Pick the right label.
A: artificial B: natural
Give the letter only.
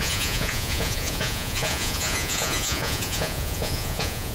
A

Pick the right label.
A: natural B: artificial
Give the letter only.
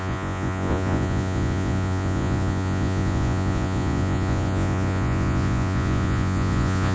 B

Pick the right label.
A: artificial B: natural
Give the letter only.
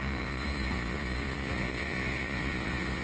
A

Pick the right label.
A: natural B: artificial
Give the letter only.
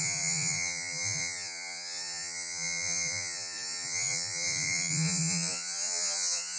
B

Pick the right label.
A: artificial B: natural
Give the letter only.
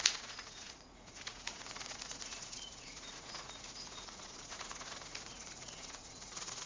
A